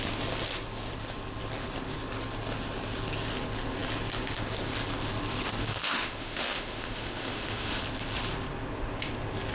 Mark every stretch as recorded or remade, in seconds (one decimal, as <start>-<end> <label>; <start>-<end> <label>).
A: 0.0-5.6 recorded; 5.6-7.8 remade; 7.8-9.5 recorded